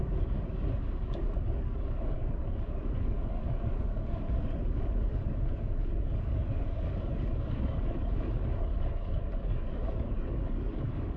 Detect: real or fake fake